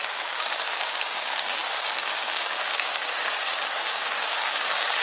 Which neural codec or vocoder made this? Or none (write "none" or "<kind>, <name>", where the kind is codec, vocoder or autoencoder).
codec, DAC